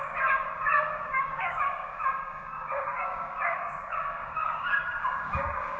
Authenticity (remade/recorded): remade